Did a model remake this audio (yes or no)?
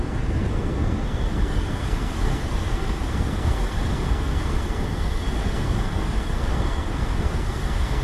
yes